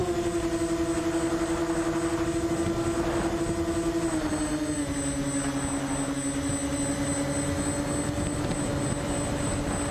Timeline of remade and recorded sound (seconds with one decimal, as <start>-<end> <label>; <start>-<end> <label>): 0.0-9.9 recorded